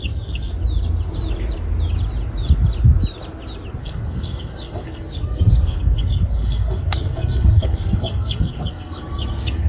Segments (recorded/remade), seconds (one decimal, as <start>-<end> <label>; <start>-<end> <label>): 0.0-0.5 remade; 0.5-3.8 recorded; 3.8-9.7 remade